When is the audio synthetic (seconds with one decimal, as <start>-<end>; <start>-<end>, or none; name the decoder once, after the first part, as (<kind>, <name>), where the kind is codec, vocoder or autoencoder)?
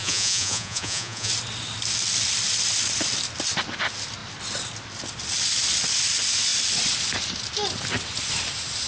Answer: 0.0-1.3 (vocoder, Vocos)